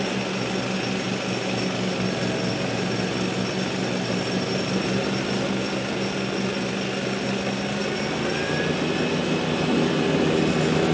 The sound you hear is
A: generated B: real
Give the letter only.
B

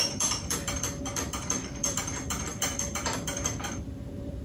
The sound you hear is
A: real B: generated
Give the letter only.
B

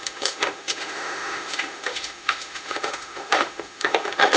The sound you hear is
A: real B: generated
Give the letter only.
B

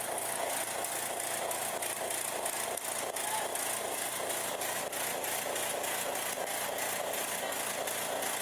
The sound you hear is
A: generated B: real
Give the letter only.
B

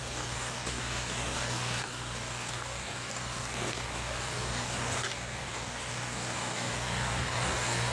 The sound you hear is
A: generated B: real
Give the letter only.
A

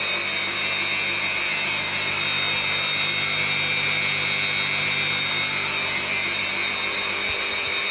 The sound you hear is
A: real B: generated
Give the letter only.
A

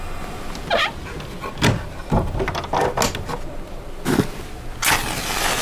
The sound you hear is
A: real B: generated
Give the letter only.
A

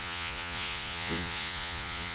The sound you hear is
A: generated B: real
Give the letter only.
A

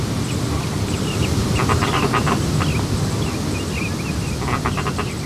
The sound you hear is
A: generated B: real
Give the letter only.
B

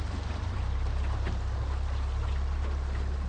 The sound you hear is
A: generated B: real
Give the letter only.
B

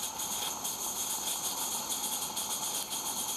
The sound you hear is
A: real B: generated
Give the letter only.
A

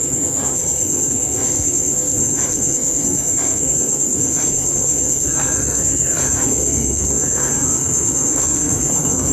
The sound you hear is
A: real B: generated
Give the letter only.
B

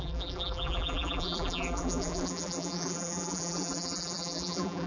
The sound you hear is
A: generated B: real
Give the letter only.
A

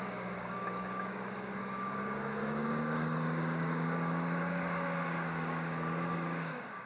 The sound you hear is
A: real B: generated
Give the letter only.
B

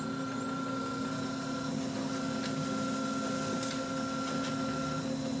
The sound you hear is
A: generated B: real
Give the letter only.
B